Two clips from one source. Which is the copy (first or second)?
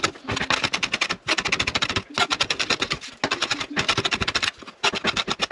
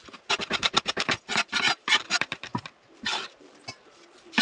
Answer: second